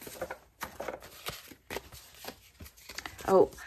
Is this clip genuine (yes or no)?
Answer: yes